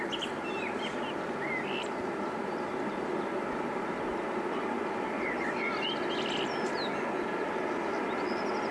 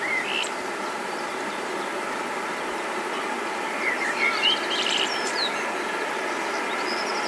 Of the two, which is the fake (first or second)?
second